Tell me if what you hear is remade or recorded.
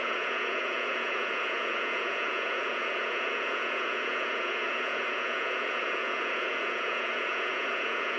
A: remade